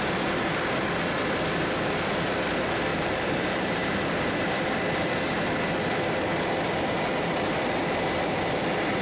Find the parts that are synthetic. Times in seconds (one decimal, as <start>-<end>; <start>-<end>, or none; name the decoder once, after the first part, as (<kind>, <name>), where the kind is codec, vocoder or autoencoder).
2.9-4.1 (vocoder, BigVGAN v2)

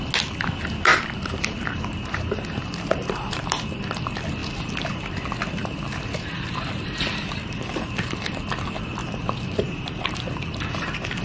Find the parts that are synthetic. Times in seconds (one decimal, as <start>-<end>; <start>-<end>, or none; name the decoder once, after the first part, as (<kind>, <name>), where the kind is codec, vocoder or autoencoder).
0.9-3.8 (vocoder, BigVGAN v2); 5.6-8.4; 9.0-11.2

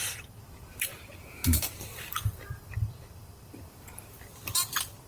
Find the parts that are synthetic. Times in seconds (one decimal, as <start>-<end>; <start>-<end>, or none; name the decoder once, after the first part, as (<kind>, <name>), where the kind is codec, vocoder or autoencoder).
0.0-5.1 (vocoder, BigVGAN v2)

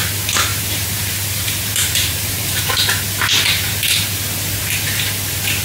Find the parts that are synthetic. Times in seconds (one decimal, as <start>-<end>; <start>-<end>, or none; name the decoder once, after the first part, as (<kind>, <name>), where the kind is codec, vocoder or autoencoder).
0.5-2.6 (vocoder, BigVGAN v2)